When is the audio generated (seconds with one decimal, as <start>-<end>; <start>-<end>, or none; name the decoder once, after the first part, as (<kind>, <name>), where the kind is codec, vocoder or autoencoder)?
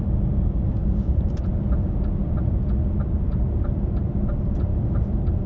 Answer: 0.8-1.4 (vocoder, BigVGAN v2); 4.7-5.5